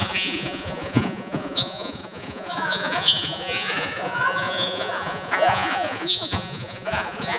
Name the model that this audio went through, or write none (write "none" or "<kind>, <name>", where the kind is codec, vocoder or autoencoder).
vocoder, Vocos